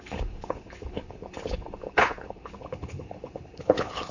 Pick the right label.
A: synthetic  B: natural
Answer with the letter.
A